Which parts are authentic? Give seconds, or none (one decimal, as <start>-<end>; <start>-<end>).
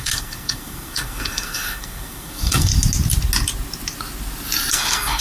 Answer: 2.7-4.7